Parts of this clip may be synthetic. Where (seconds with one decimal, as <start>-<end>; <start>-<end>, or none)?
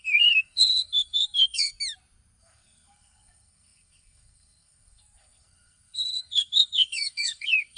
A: 0.0-1.7; 2.4-7.8